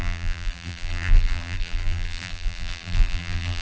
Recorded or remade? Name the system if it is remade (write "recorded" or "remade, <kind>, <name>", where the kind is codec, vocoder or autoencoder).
remade, vocoder, BigVGAN v2